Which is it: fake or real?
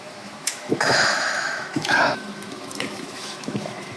fake